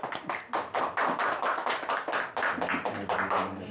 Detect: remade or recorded recorded